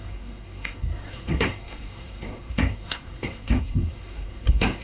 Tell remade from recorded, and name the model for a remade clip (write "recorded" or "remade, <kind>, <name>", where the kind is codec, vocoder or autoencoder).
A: remade, codec, SNAC